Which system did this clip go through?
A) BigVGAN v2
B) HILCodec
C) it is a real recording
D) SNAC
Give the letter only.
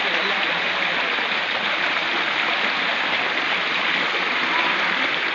C